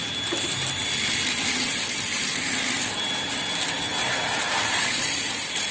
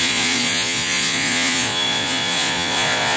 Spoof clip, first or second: second